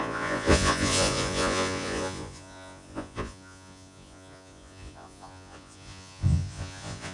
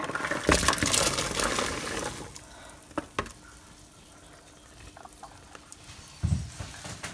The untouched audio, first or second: second